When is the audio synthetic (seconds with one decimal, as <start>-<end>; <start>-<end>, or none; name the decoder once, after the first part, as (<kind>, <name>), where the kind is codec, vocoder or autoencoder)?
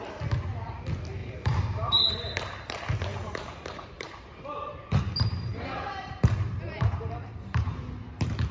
1.2-2.1 (vocoder, BigVGAN v2); 3.1-7.8